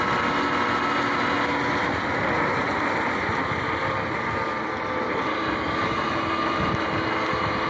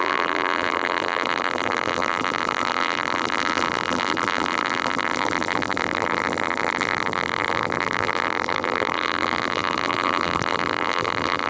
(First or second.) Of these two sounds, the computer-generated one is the second